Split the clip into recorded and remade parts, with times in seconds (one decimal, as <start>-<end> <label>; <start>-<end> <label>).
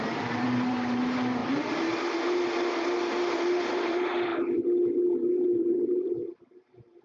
0.0-1.4 remade; 1.4-3.6 recorded; 3.6-4.3 remade; 4.3-5.7 recorded; 5.7-7.0 remade